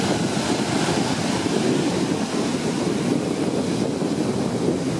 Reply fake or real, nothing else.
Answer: real